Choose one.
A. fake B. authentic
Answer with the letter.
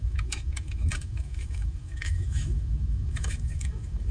A